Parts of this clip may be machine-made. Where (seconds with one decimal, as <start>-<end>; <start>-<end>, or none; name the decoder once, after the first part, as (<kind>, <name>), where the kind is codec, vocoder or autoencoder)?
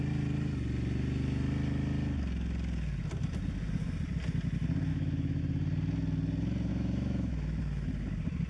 4.9-5.4 (autoencoder, DAC-VAE); 6.7-7.6